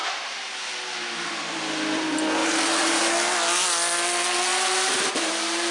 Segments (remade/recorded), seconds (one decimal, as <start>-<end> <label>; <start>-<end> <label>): 0.0-0.5 remade; 0.5-2.4 recorded; 2.4-3.0 remade; 3.0-4.5 recorded; 4.5-5.1 remade; 5.1-5.7 recorded